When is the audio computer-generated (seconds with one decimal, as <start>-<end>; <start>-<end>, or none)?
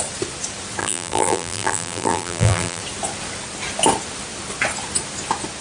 0.8-2.8